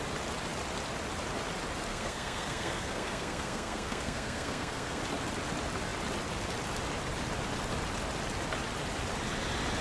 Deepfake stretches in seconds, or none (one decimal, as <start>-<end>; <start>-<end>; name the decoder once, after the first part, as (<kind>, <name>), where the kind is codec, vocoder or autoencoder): 1.9-5.0 (codec, SNAC)